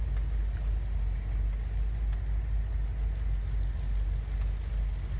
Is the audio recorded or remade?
recorded